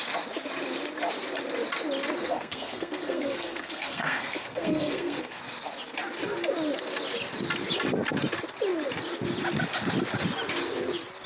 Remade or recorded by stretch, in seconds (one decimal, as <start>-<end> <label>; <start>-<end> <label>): 0.0-2.2 recorded; 2.2-5.4 remade; 5.4-11.3 recorded